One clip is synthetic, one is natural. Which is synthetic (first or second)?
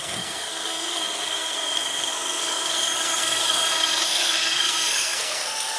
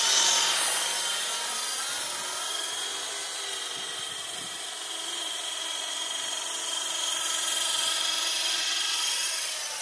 first